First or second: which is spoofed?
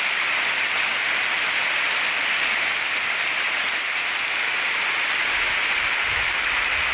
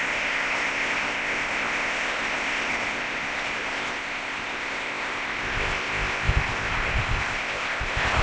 second